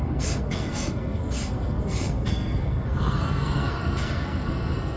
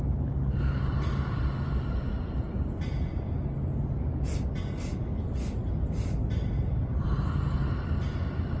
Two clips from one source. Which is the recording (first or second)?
second